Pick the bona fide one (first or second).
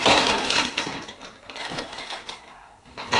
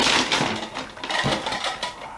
second